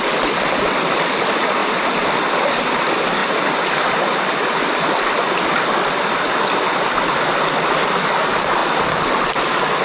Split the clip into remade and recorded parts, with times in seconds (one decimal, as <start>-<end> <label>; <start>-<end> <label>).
0.0-9.8 recorded